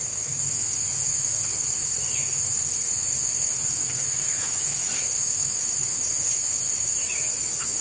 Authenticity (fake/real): fake